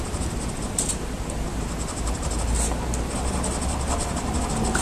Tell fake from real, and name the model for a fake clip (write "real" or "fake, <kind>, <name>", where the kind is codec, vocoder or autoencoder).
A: real